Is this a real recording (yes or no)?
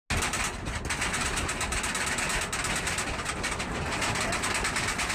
yes